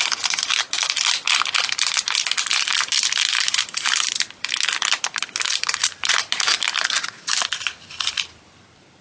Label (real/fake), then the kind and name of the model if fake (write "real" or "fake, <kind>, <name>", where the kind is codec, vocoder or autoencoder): fake, vocoder, BigVGAN v2